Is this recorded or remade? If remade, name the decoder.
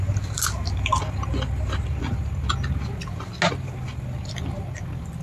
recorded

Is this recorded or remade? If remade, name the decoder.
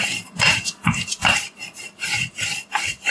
remade, vocoder, BigVGAN v2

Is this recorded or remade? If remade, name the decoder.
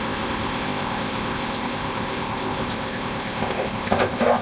remade, codec, ZipCodec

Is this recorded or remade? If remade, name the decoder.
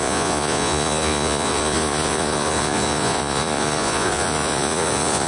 remade, vocoder, Vocos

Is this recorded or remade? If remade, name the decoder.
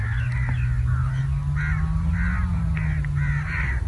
recorded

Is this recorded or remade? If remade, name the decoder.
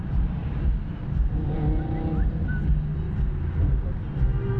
recorded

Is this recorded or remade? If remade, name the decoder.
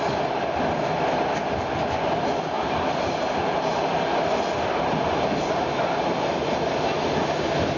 recorded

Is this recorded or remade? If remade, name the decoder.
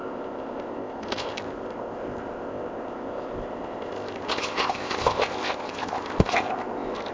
remade, codec, ZipCodec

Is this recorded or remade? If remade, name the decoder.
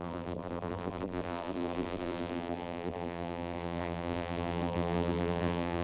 remade, vocoder, BigVGAN v2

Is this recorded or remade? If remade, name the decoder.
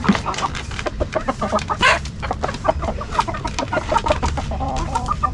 remade, vocoder, BigVGAN v2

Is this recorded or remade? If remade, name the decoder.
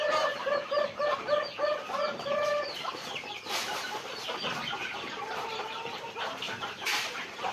remade, vocoder, BigVGAN v2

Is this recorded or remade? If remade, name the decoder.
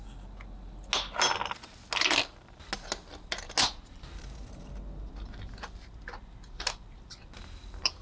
recorded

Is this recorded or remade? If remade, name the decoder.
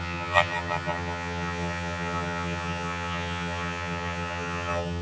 remade, vocoder, HiFi-GAN